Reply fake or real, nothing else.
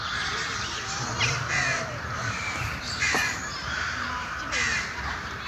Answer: fake